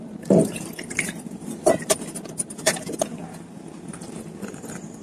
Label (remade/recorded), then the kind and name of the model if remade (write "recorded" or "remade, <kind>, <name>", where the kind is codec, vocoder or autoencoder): remade, vocoder, BigVGAN v2